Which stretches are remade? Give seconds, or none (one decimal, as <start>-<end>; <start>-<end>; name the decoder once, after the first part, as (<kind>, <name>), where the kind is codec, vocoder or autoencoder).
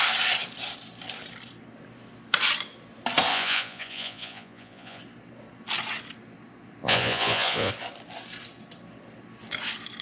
3.3-5.0 (vocoder, Vocos); 6.8-7.7